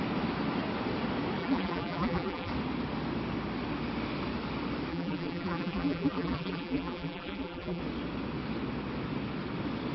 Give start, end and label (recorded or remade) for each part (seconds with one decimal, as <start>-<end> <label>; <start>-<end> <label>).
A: 0.0-1.4 recorded; 1.4-2.5 remade; 2.5-4.9 recorded; 4.9-7.8 remade; 7.8-9.9 recorded

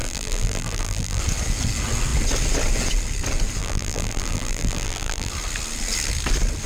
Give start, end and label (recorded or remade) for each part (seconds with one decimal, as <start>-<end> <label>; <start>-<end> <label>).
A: 0.0-1.2 remade; 1.2-3.6 recorded; 3.6-5.3 remade; 5.3-6.7 recorded

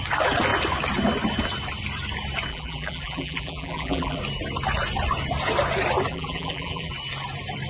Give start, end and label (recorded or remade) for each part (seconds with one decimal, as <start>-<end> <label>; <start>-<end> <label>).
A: 0.0-2.5 recorded; 2.5-4.2 remade; 4.2-6.1 recorded; 6.1-6.9 remade; 6.9-7.7 recorded

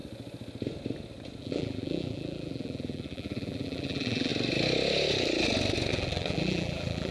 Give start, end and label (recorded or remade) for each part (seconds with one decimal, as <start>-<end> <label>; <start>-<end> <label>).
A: 0.0-1.4 recorded; 1.4-4.3 remade; 4.3-5.9 recorded; 5.9-7.1 remade

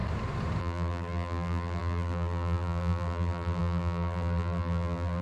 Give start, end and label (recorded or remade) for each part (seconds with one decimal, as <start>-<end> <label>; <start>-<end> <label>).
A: 0.0-0.6 recorded; 0.6-5.2 remade

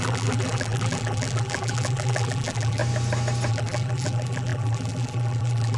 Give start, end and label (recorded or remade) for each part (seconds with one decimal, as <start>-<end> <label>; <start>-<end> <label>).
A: 0.0-2.8 remade; 2.8-3.5 recorded; 3.5-5.8 remade

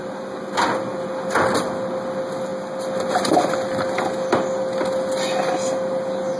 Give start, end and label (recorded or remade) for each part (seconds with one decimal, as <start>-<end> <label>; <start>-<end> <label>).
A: 0.0-6.4 recorded

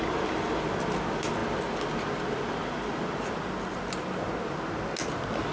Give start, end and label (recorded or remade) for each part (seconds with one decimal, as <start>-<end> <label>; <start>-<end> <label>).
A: 0.0-5.5 recorded